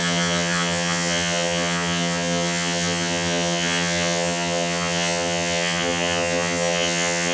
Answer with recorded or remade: remade